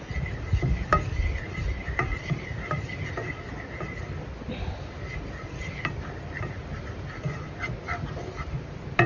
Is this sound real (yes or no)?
yes